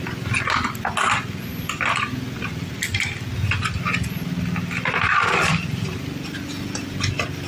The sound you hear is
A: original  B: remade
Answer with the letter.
A